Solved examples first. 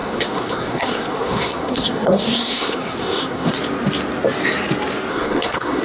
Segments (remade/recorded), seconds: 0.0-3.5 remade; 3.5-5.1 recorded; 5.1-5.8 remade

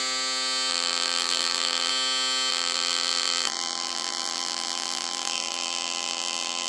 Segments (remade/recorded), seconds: 0.0-0.7 recorded; 0.7-1.9 remade; 1.9-2.5 recorded; 2.5-6.7 remade

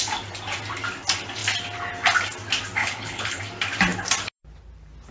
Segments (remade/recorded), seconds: 0.0-2.8 recorded; 2.8-3.4 remade; 3.4-5.1 recorded

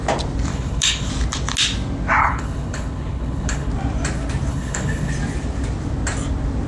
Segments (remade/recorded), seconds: 0.0-0.5 recorded; 0.5-1.1 remade; 1.1-2.2 recorded; 2.2-3.7 remade; 3.7-4.5 recorded; 4.5-5.1 remade; 5.1-6.7 recorded

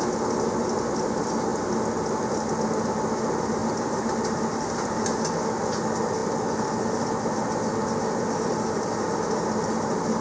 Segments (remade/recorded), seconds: 0.0-3.6 recorded; 3.6-4.9 remade; 4.9-10.2 recorded

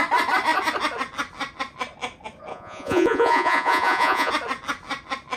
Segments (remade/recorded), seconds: 0.0-2.5 recorded; 2.5-4.3 remade; 4.3-5.4 recorded

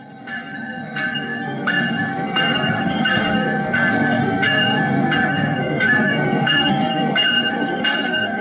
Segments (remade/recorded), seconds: 0.0-8.4 remade